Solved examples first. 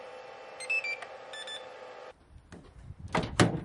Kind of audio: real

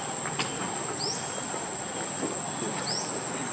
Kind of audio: real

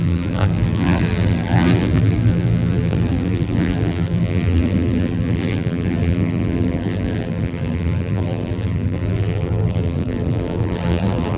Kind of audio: fake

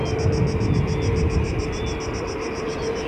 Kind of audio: real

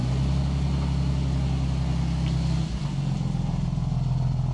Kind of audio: real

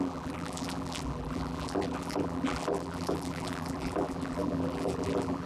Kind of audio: fake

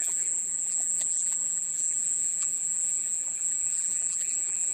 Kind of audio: fake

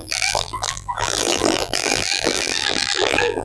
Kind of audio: fake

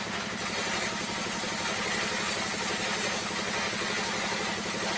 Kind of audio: real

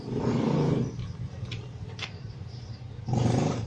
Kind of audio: fake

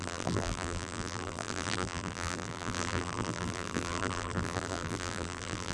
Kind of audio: fake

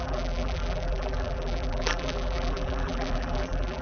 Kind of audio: fake